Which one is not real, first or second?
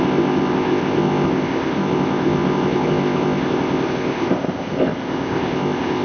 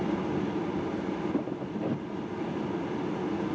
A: first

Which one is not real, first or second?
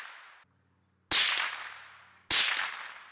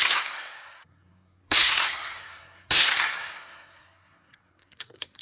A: second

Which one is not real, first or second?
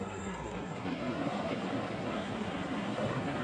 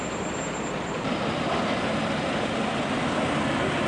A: first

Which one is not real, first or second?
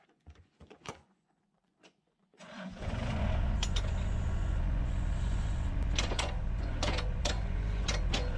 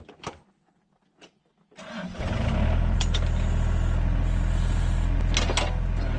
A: first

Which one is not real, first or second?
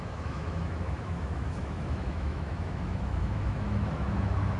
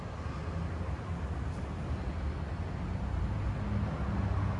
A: first